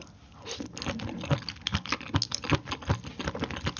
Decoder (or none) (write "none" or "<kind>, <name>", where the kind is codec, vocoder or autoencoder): none